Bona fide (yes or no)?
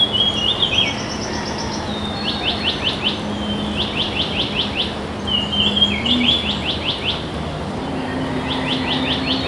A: yes